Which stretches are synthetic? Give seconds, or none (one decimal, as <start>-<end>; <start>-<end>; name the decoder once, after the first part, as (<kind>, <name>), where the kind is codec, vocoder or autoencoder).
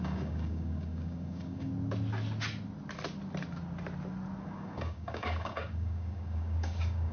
0.0-1.7 (codec, DAC); 4.4-7.1